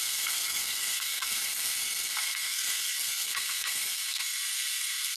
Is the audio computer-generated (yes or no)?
yes